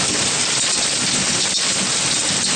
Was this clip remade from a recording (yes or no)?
no